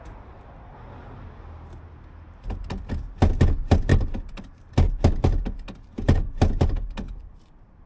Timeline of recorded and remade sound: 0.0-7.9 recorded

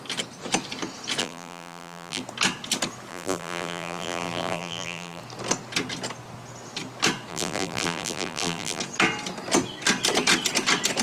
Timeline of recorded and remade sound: 0.0-1.2 recorded; 1.2-2.2 remade; 2.2-3.1 recorded; 3.1-5.2 remade; 5.2-7.3 recorded; 7.3-8.8 remade; 8.8-11.0 recorded

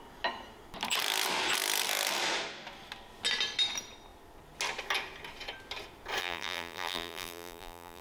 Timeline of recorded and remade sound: 0.0-6.2 recorded; 6.2-8.0 remade

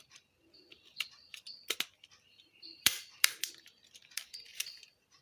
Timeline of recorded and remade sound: 0.0-2.3 recorded; 2.3-3.5 remade; 3.5-4.5 recorded; 4.5-5.2 remade